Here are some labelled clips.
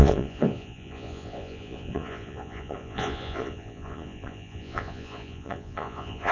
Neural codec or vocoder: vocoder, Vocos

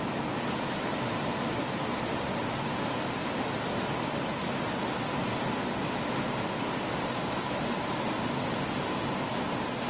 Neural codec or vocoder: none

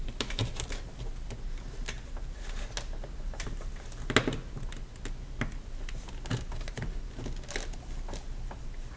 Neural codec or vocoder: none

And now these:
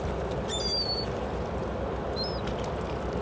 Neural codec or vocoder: none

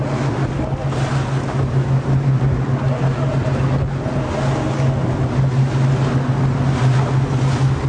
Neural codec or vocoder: none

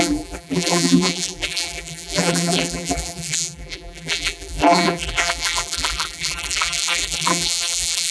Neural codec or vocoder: vocoder, BigVGAN v2